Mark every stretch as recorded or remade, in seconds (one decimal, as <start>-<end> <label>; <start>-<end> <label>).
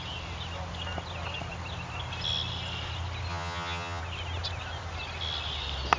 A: 0.0-3.3 recorded; 3.3-4.0 remade; 4.0-6.0 recorded